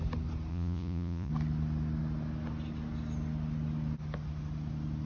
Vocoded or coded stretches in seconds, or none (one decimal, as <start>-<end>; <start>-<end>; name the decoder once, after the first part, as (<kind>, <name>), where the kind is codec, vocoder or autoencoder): 0.5-1.3 (vocoder, Vocos)